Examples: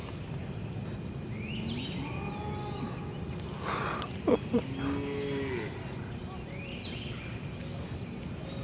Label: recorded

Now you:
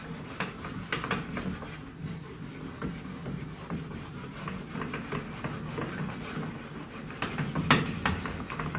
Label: recorded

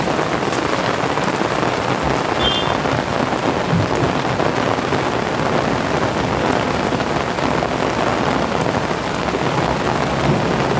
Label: recorded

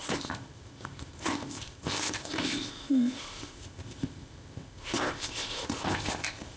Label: remade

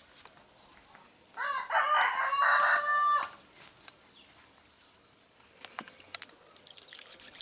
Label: recorded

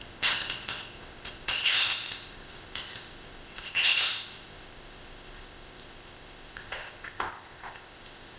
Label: remade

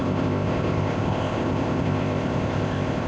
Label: remade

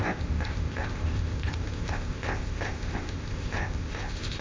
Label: remade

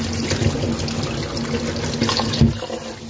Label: recorded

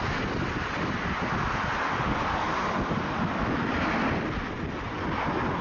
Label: recorded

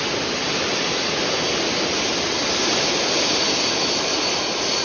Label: recorded